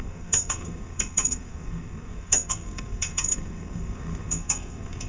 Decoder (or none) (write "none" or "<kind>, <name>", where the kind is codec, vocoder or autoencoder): codec, SNAC